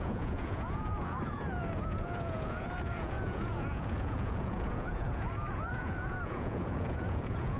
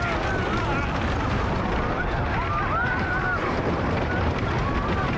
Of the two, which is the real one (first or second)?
second